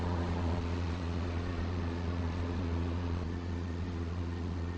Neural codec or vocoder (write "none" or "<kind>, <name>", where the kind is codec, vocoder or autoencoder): vocoder, Vocos